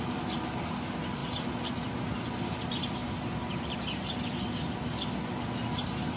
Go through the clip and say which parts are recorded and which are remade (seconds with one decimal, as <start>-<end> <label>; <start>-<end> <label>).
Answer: 0.0-6.2 recorded